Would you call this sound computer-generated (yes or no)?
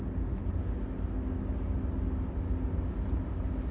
no